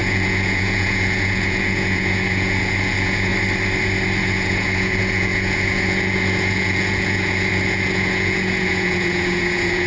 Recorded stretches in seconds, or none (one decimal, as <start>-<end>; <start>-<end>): 3.3-4.2